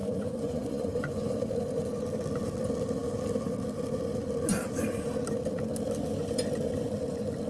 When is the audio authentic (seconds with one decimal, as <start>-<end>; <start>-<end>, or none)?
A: 1.3-7.5